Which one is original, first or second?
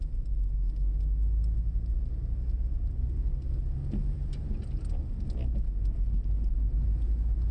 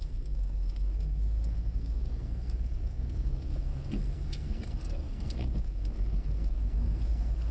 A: first